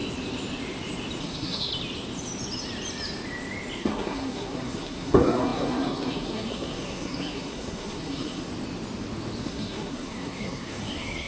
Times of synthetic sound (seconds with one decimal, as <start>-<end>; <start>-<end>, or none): 1.2-1.7; 3.8-8.5; 9.4-11.3